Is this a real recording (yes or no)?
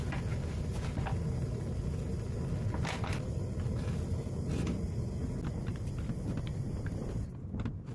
yes